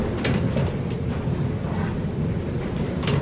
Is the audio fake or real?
real